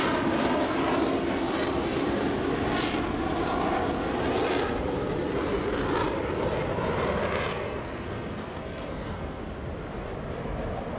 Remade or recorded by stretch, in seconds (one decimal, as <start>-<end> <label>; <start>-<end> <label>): 0.0-7.5 recorded; 7.5-9.4 remade; 9.4-11.0 recorded